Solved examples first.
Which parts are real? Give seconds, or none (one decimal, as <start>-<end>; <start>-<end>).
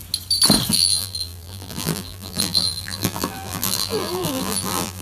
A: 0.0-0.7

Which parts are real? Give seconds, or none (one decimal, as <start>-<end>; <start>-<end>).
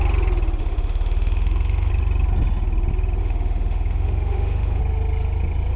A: 0.0-0.6; 1.9-3.2; 4.8-5.8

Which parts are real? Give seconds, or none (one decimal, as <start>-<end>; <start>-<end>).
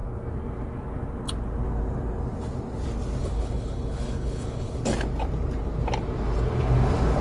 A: 0.0-3.2; 4.8-7.2